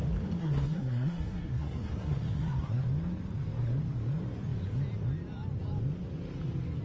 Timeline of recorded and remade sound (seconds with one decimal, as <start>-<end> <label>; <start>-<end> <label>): 0.0-0.4 recorded; 0.4-2.8 remade; 2.8-6.8 recorded